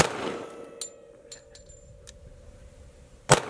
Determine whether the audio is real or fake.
real